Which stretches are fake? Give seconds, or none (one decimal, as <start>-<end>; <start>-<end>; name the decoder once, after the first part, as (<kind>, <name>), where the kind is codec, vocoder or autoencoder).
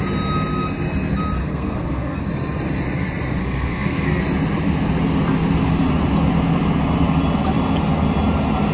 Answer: 1.4-2.2 (codec, SNAC); 3.4-4.2